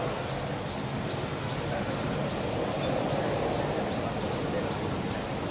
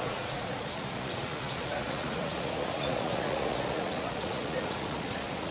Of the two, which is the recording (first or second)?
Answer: first